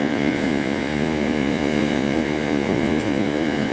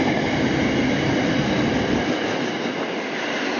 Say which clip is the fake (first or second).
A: first